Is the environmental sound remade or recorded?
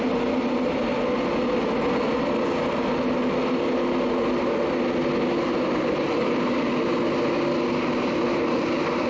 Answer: recorded